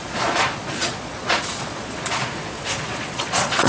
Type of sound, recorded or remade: remade